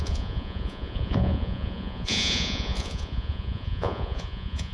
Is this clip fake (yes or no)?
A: yes